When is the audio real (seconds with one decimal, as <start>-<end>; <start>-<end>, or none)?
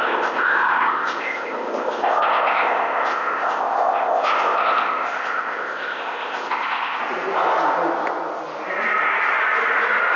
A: 7.0-10.2